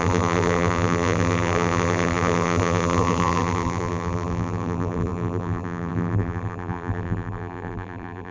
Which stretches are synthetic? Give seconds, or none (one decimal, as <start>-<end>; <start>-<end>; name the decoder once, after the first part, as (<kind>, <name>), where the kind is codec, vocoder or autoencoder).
0.0-8.3 (vocoder, BigVGAN v2)